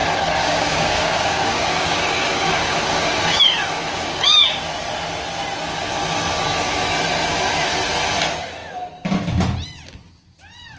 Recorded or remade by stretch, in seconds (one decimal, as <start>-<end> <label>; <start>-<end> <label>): 0.0-4.6 remade; 4.6-10.8 recorded